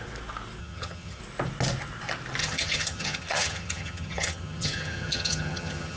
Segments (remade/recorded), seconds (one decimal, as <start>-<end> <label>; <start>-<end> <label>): 0.0-0.6 recorded; 0.6-1.2 remade; 1.2-2.4 recorded; 2.4-6.0 remade